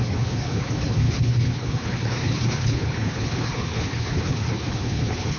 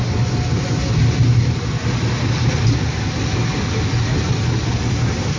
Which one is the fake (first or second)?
first